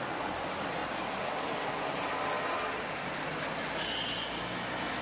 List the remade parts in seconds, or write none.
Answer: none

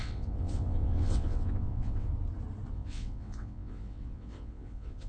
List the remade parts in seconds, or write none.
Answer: 0.0-2.1 (vocoder, WaveNeXt); 2.7-5.1